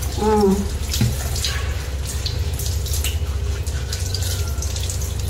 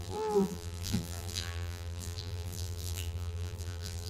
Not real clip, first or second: second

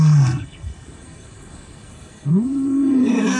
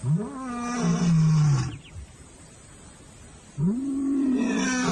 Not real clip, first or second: first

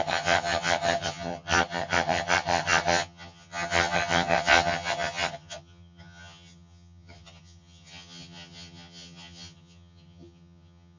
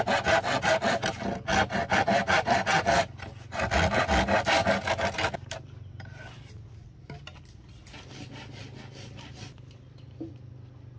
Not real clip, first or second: first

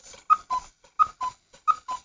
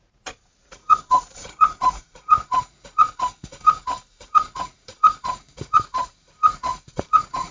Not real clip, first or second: second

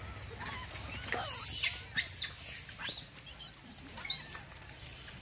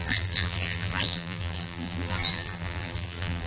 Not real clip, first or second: second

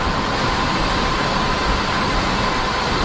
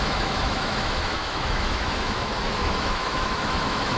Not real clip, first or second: second